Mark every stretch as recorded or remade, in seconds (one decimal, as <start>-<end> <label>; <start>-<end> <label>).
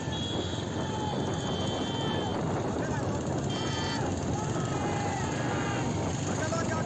0.0-2.3 recorded; 2.3-6.1 remade; 6.1-6.9 recorded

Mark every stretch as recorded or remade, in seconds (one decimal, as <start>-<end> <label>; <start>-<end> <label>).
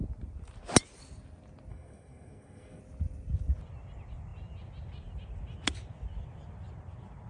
0.0-1.7 recorded; 1.7-2.8 remade; 2.8-7.3 recorded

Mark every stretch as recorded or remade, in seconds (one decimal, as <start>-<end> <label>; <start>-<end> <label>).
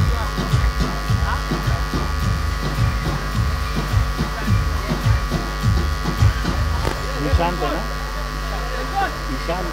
0.0-2.4 recorded; 2.4-5.4 remade; 5.4-6.3 recorded; 6.3-7.0 remade; 7.0-8.0 recorded; 8.0-9.7 remade